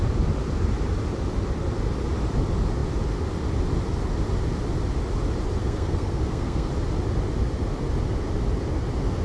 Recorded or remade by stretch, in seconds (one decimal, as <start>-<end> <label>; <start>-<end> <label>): 0.0-5.6 recorded; 5.6-6.7 remade; 6.7-9.2 recorded